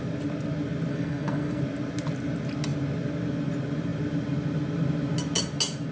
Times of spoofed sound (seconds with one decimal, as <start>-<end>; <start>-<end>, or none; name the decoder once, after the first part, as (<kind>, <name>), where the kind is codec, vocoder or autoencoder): 0.9-1.6 (codec, SNAC)